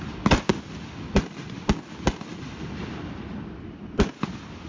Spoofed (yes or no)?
no